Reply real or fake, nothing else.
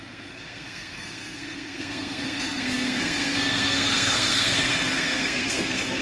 fake